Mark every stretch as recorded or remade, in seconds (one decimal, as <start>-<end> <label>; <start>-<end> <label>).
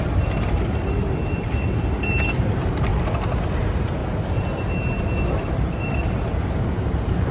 0.0-2.9 remade; 2.9-3.6 recorded; 3.6-4.0 remade; 4.0-5.3 recorded; 5.3-7.3 remade